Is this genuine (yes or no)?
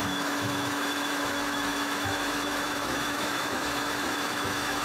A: no